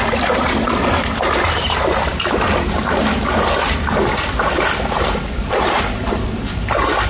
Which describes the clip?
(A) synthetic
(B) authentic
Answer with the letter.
B